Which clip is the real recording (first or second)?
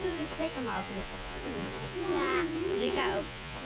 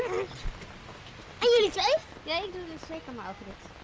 second